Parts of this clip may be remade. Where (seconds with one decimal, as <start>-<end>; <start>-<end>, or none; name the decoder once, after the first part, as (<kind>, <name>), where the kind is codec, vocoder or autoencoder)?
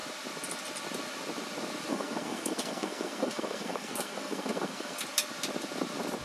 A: 1.9-5.0 (codec, SNAC)